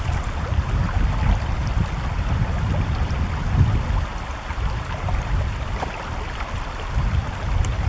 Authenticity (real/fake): real